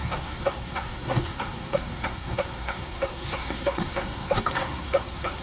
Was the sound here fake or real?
fake